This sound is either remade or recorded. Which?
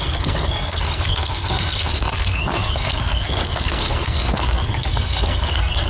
remade